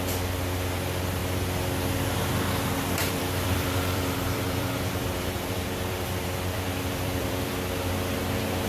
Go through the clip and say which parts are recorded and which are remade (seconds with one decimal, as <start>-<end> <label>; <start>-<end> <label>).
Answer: 0.0-3.0 recorded; 3.0-8.2 remade; 8.2-8.7 recorded